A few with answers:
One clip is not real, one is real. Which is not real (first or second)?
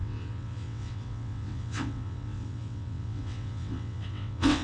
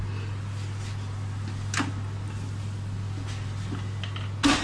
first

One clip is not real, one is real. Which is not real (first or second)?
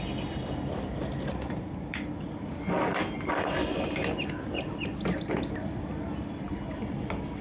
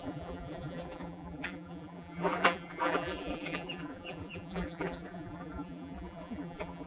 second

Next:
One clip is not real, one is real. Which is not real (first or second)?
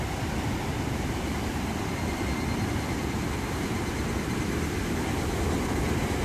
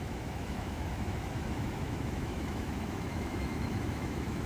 second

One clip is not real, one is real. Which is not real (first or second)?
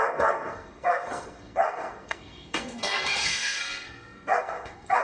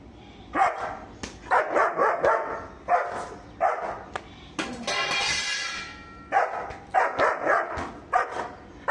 first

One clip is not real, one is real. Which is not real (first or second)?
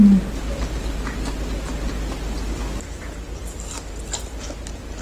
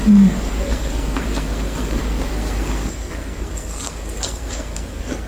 second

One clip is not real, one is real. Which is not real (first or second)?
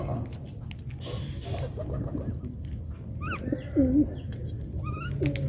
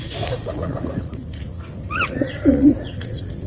second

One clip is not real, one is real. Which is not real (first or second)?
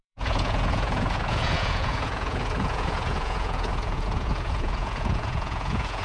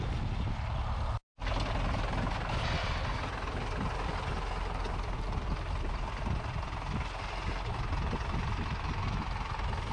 first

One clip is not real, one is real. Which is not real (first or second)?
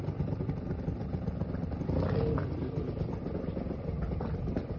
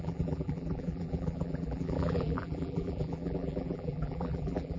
second